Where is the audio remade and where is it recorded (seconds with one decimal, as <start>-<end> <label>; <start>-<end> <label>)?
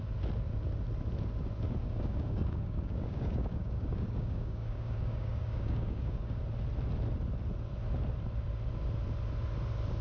0.0-1.8 recorded; 1.8-6.4 remade; 6.4-10.0 recorded